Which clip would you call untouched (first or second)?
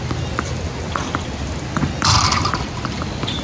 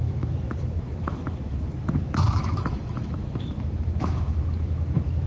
first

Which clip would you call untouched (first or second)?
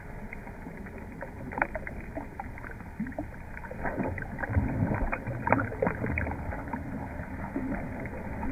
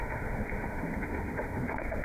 first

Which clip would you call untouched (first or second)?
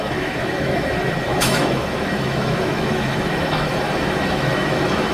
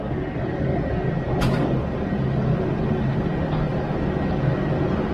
second